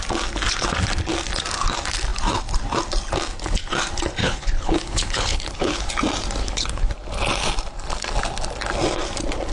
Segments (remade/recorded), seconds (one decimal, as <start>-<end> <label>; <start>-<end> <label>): 0.0-4.2 recorded; 4.2-5.9 remade; 5.9-6.4 recorded; 6.4-6.9 remade; 6.9-9.5 recorded